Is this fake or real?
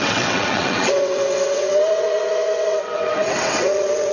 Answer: fake